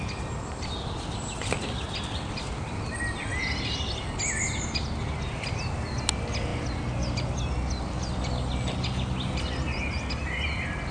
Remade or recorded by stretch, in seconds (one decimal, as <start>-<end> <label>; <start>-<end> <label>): 0.0-10.9 recorded